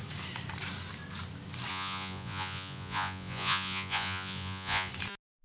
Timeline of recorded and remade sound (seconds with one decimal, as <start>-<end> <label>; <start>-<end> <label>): 0.0-1.7 recorded; 1.7-4.9 remade; 4.9-5.4 recorded